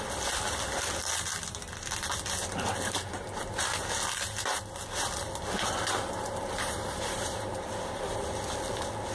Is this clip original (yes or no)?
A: yes